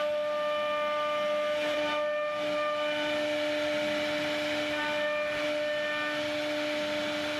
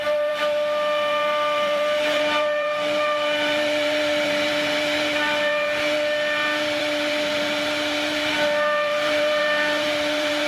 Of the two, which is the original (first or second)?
first